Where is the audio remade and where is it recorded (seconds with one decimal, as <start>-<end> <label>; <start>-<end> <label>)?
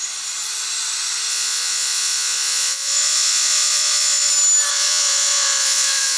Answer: 0.0-1.3 recorded; 1.3-4.3 remade; 4.3-4.7 recorded; 4.7-6.2 remade